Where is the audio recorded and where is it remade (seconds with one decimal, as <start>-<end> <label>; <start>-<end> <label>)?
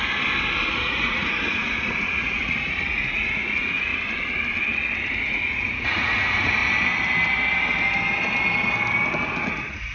0.0-0.7 recorded; 0.7-3.9 remade; 3.9-5.1 recorded; 5.1-6.6 remade; 6.6-9.4 recorded; 9.4-9.9 remade